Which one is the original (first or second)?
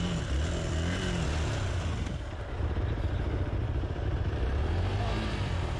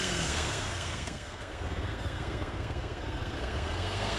first